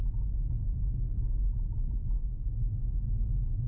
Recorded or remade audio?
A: recorded